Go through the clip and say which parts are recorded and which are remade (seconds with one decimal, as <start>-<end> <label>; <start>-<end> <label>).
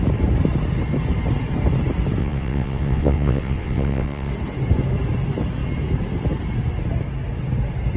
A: 0.0-2.2 recorded; 2.2-4.3 remade; 4.3-8.0 recorded